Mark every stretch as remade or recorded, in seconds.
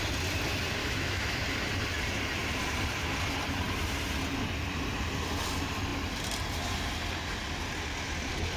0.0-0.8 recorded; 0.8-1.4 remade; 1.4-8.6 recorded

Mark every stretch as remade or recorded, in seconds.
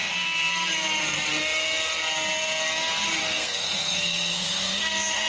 0.0-0.5 remade; 0.5-3.2 recorded; 3.2-5.3 remade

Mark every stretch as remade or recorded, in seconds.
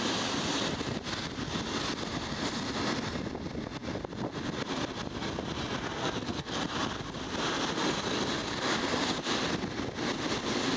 0.0-6.0 recorded; 6.0-6.6 remade; 6.6-10.8 recorded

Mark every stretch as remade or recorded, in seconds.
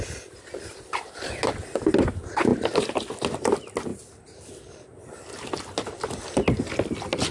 0.0-7.3 recorded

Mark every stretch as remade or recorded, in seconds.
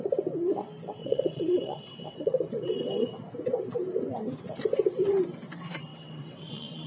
0.0-1.0 recorded; 1.0-2.7 remade; 2.7-5.9 recorded; 5.9-6.9 remade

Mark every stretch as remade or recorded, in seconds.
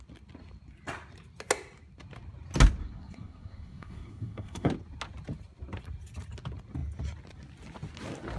0.0-2.8 recorded; 2.8-4.7 remade; 4.7-8.4 recorded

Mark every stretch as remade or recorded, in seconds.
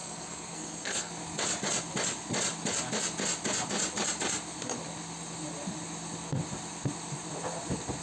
0.0-1.1 remade; 1.1-8.0 recorded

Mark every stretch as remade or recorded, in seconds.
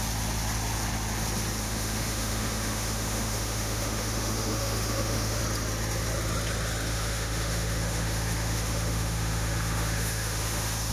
0.0-1.6 recorded; 1.6-5.4 remade; 5.4-6.9 recorded; 6.9-10.9 remade